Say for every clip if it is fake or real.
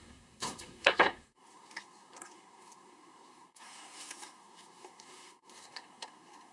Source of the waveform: fake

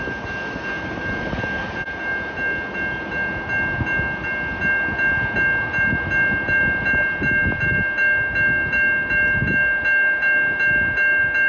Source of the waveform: real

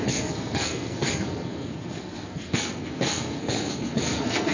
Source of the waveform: fake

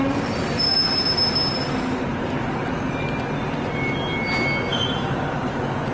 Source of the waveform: real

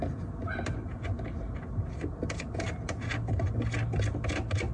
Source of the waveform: real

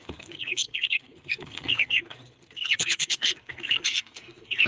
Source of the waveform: fake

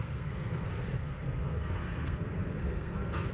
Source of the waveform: fake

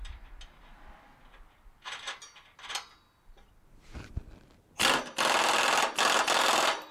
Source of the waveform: real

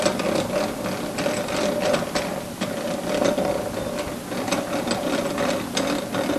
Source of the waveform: real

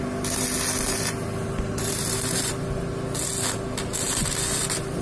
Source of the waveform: real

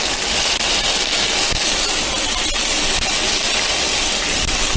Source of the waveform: real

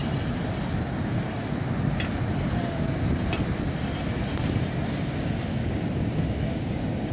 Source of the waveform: real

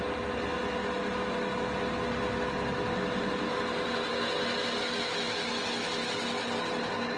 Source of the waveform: real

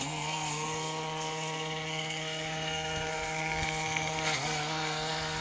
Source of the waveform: fake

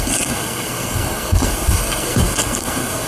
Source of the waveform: fake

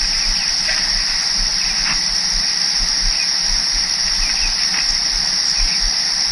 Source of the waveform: real